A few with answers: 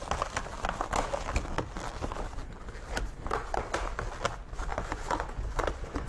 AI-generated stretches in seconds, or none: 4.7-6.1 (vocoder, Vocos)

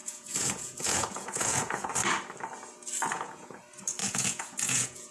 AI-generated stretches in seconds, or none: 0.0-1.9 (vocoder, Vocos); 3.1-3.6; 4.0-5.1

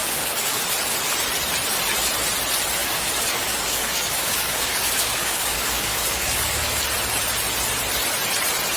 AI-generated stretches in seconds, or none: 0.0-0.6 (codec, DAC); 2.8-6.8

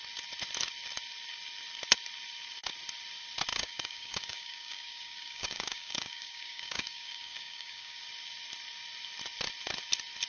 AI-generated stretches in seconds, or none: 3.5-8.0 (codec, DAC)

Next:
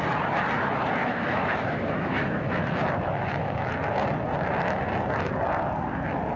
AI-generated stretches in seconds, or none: 1.0-3.7 (autoencoder, DAC-VAE)